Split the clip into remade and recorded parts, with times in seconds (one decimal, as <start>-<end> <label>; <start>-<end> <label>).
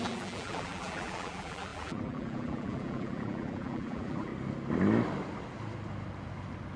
0.0-4.3 remade; 4.3-6.8 recorded